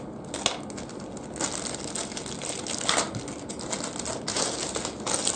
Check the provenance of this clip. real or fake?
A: real